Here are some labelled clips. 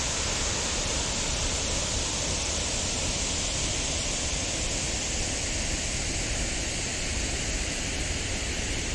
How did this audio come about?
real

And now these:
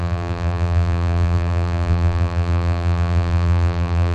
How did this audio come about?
fake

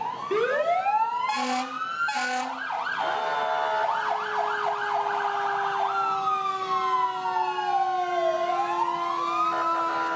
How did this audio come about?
real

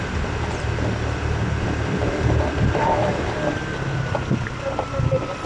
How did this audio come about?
real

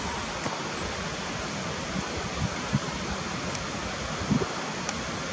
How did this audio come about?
real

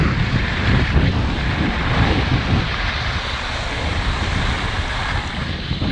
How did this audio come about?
fake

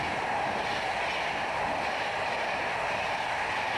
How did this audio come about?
real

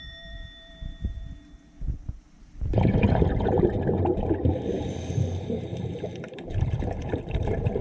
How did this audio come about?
fake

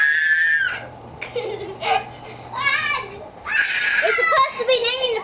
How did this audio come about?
real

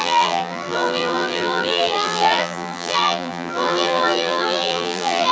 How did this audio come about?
fake